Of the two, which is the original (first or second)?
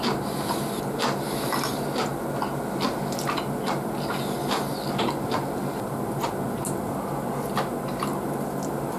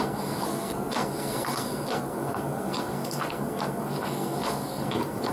first